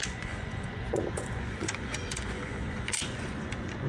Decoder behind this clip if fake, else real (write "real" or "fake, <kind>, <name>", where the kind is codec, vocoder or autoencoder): fake, vocoder, Vocos